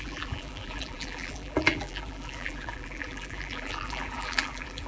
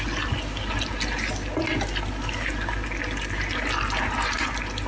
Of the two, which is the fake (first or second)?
first